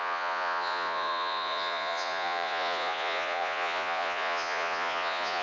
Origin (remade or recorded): remade